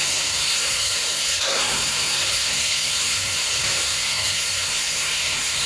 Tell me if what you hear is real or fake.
fake